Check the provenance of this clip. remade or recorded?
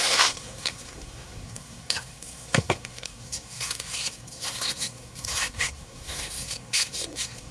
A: remade